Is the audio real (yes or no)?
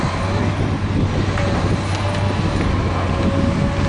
yes